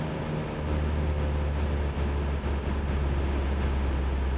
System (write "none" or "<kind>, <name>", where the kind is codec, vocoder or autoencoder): none